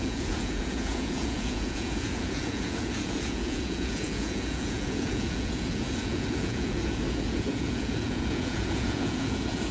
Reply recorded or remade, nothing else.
remade